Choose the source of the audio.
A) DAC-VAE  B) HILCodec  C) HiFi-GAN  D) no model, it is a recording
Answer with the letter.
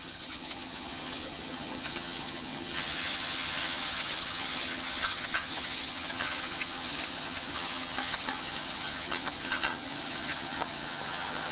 C